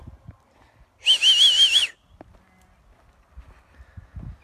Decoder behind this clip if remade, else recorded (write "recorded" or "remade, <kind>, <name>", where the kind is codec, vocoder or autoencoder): recorded